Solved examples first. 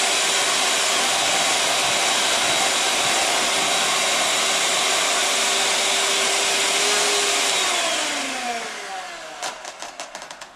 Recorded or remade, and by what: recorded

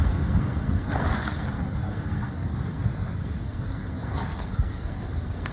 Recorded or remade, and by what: remade, codec, SNAC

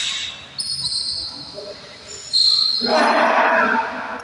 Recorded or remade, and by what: recorded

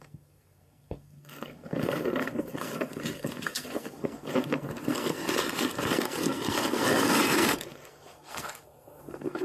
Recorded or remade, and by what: remade, codec, SNAC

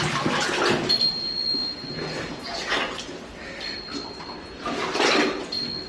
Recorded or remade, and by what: recorded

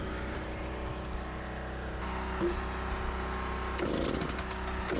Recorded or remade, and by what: recorded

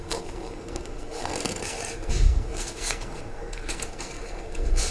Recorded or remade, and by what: remade, codec, SNAC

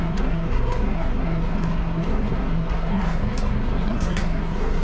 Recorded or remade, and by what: remade, codec, SNAC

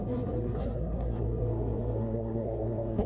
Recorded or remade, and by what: remade, codec, SNAC